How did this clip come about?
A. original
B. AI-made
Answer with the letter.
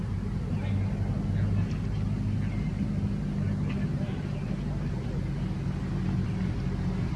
A